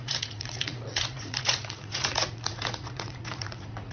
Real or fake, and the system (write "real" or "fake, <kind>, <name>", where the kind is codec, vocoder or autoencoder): fake, vocoder, Vocos